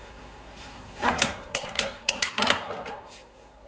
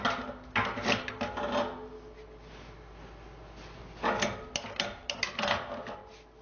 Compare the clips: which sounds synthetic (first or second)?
first